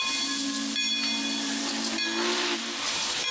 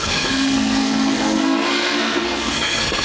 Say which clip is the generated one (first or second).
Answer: second